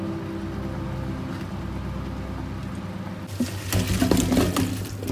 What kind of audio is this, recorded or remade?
recorded